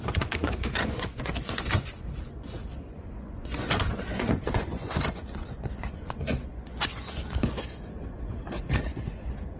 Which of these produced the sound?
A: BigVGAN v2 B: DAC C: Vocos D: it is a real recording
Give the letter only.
C